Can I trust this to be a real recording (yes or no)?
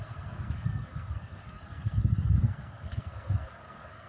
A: no